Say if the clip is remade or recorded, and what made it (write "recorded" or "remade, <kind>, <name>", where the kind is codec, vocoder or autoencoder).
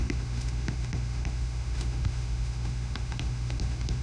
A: remade, autoencoder, DAC-VAE